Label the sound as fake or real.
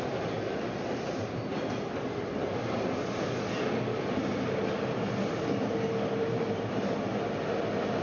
real